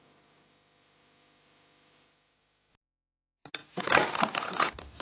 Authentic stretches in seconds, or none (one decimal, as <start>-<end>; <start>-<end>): 0.0-5.0

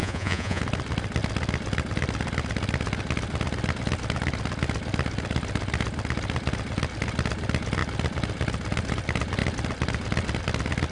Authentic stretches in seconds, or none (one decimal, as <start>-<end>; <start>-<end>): 0.6-10.9

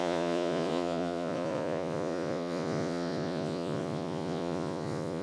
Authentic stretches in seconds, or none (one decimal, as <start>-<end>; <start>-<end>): none

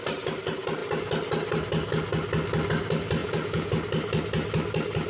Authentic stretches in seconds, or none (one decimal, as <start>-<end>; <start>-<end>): 0.0-3.2; 3.7-5.1

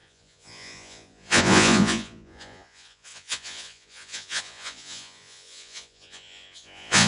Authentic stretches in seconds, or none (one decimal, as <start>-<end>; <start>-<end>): none

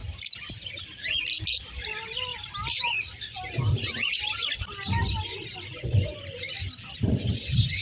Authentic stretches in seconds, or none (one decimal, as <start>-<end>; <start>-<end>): 0.0-5.7; 6.4-7.8

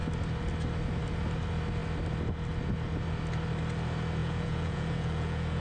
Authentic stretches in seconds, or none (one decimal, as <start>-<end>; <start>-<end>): 0.0-4.2